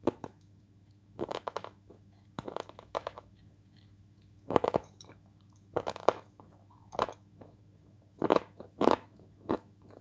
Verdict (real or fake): fake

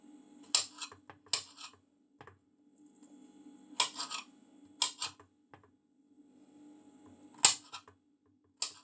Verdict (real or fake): real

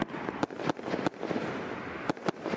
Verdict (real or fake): real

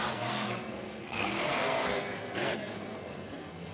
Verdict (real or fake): fake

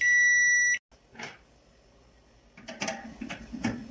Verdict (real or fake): real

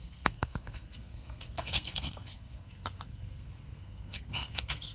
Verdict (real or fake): fake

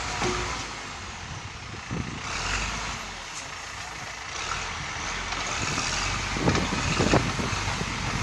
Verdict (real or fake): real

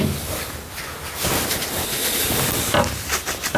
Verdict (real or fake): real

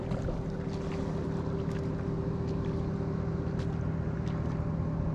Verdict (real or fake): real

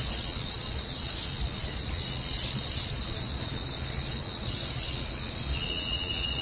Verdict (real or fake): fake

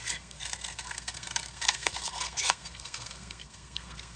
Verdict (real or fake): fake